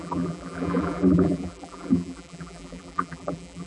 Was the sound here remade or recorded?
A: remade